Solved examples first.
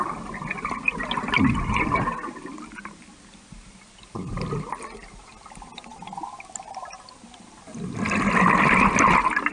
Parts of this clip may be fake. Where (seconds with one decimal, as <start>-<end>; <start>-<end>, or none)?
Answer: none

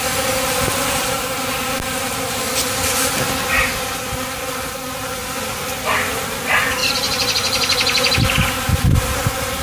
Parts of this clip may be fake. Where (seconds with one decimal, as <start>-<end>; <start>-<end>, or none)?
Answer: none

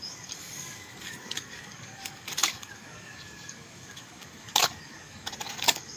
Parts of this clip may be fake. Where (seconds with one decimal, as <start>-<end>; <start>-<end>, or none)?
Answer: 0.0-6.0